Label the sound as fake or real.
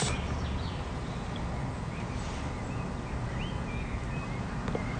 real